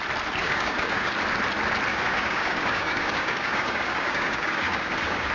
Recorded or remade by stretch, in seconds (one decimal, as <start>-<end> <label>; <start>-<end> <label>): 0.0-0.4 recorded; 0.4-1.1 remade; 1.1-1.9 recorded; 1.9-5.3 remade